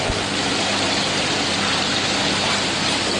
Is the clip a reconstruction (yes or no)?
no